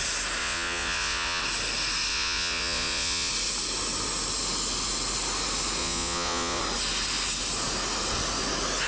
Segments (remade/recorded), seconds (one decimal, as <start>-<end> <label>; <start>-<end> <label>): 0.0-0.4 recorded; 0.4-1.4 remade; 1.4-2.1 recorded; 2.1-3.3 remade; 3.3-5.8 recorded; 5.8-6.6 remade; 6.6-8.9 recorded